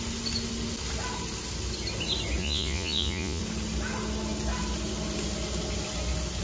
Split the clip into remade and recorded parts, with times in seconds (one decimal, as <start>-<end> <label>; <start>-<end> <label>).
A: 0.0-2.4 recorded; 2.4-3.4 remade; 3.4-6.4 recorded